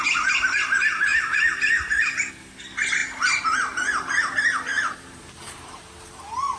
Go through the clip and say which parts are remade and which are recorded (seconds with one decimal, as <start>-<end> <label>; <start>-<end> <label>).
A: 0.0-4.7 recorded; 4.7-5.9 remade; 5.9-6.6 recorded